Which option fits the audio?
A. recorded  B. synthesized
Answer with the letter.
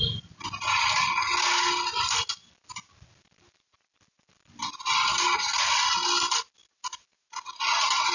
A